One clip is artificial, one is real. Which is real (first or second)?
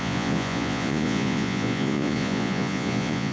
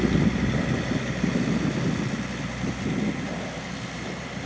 second